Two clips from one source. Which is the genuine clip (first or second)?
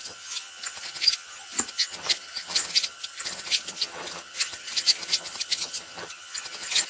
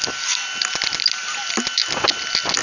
second